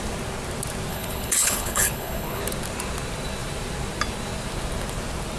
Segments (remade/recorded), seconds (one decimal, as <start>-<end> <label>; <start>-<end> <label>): 0.0-0.9 recorded; 0.9-2.4 remade; 2.4-5.4 recorded